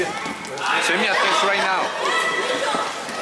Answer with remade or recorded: recorded